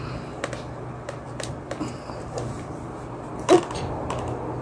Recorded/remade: recorded